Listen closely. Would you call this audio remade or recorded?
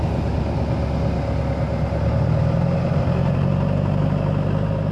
recorded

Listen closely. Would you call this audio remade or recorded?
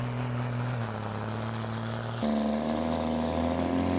recorded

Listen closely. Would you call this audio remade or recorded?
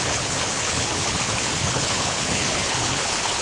remade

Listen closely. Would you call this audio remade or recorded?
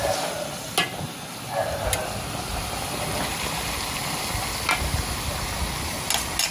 recorded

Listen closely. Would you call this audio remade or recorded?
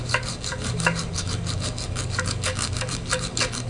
remade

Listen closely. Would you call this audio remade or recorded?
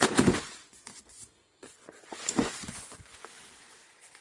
remade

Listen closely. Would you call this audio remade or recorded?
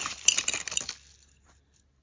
recorded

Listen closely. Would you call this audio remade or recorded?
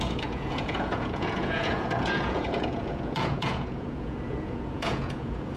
remade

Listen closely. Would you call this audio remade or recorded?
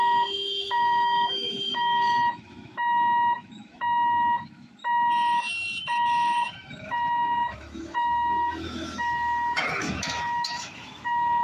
remade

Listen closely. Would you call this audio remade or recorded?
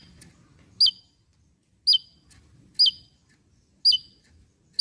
recorded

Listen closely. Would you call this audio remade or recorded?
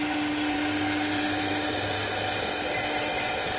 recorded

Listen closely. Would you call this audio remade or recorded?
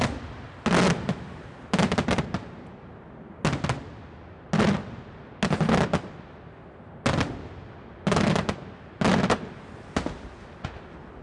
recorded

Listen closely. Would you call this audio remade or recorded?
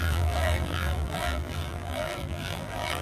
remade